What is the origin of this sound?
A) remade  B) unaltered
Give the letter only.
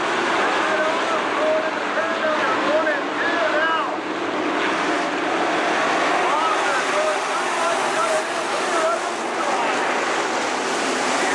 B